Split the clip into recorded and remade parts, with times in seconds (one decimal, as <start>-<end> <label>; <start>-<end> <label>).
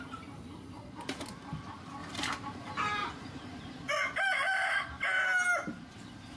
0.0-2.0 recorded; 2.0-3.9 remade; 3.9-6.4 recorded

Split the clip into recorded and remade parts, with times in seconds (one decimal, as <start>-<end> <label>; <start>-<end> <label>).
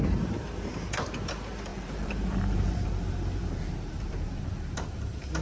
0.0-1.7 recorded; 1.7-4.4 remade; 4.4-5.4 recorded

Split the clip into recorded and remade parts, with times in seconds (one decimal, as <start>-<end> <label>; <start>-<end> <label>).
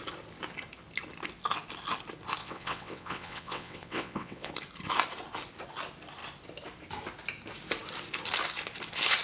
0.0-2.4 recorded; 2.4-4.5 remade; 4.5-9.2 recorded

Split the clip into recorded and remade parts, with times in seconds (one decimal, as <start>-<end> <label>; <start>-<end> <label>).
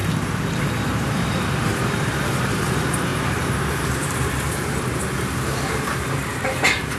0.0-7.0 remade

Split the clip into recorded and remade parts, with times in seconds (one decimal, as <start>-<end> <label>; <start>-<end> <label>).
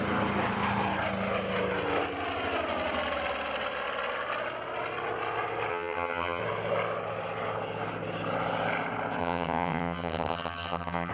0.0-5.7 recorded; 5.7-6.4 remade; 6.4-9.2 recorded; 9.2-11.1 remade